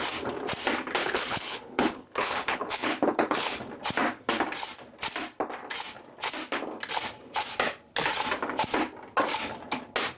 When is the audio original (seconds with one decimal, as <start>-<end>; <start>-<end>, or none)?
0.0-1.0; 3.6-10.2